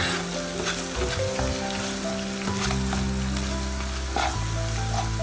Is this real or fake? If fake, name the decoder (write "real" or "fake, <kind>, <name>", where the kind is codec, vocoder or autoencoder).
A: real